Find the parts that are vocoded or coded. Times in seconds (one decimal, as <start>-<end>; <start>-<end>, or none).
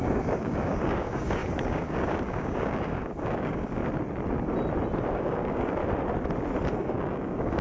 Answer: 0.0-3.8; 5.1-5.8; 6.7-7.6